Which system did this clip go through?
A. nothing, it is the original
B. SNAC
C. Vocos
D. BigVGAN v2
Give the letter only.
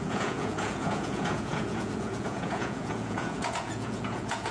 C